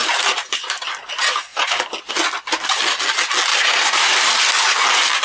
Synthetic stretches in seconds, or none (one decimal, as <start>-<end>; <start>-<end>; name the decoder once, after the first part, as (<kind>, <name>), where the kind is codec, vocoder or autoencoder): 0.0-0.8 (vocoder, BigVGAN v2); 1.5-2.1; 3.5-4.4